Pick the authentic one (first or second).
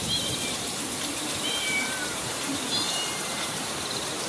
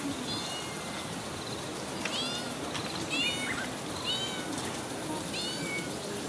second